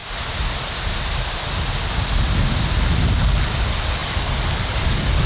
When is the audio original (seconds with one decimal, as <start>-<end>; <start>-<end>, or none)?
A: 0.0-3.2